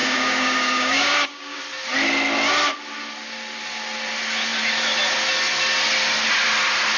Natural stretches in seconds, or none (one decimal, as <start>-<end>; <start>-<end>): 1.6-7.0